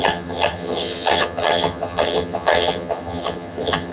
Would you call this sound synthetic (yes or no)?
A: yes